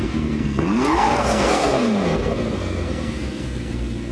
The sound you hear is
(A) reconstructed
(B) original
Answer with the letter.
A